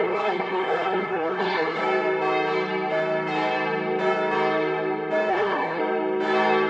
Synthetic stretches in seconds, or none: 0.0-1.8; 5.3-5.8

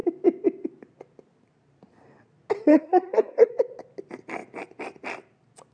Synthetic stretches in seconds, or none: 2.7-3.5

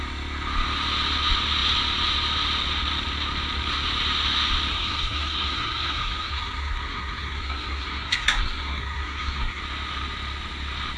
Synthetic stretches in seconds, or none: 4.7-9.6

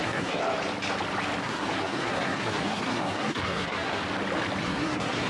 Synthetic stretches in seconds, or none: 0.0-0.4; 1.4-4.0; 4.6-5.3

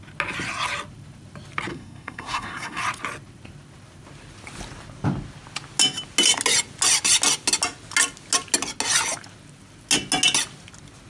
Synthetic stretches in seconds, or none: 1.7-2.8